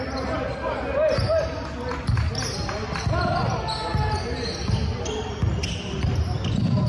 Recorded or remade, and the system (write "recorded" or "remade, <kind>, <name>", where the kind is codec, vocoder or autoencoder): recorded